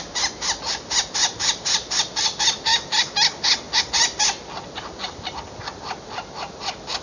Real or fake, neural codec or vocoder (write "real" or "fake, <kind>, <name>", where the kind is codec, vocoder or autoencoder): real